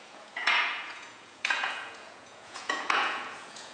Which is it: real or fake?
fake